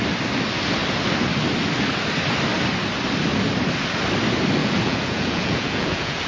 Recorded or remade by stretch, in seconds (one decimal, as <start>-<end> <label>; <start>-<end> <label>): 0.0-4.6 recorded; 4.6-6.3 remade